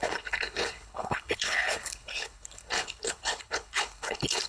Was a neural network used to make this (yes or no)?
yes